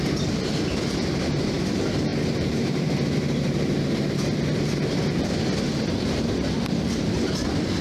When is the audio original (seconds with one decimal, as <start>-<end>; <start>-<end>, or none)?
0.0-7.8